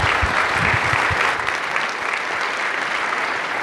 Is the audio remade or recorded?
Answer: recorded